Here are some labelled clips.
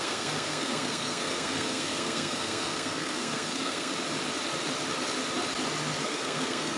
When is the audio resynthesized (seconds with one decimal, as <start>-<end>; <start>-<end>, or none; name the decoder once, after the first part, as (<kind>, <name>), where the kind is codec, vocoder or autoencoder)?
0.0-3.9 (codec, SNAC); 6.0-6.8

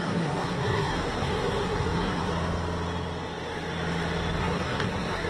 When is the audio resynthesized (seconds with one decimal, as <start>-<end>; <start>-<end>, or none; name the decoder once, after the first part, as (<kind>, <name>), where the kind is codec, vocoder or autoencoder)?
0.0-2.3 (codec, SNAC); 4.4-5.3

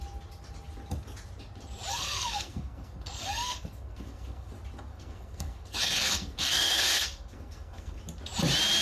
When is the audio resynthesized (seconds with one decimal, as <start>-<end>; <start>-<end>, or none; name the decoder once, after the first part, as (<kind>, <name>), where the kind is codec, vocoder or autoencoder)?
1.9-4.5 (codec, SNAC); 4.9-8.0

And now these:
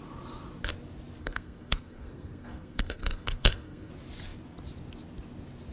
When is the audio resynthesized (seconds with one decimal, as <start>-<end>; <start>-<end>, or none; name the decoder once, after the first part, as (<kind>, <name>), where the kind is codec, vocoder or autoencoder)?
1.2-3.9 (codec, SNAC)

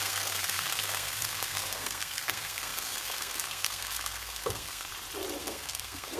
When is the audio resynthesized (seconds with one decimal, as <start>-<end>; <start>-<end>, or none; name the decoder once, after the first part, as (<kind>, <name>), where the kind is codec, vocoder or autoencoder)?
0.0-4.9 (codec, SNAC); 5.4-6.2